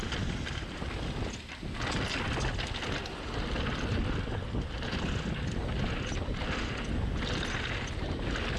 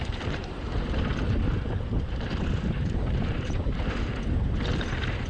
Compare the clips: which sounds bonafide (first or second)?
first